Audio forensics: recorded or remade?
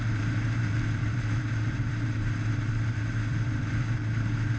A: remade